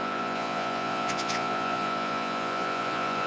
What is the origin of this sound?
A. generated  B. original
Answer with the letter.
A